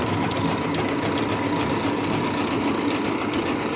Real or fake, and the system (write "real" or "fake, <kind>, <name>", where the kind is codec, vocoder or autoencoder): real